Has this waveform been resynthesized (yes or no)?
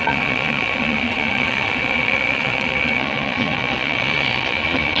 yes